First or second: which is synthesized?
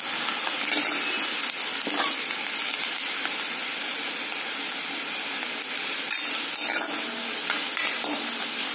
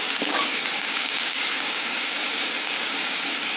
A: second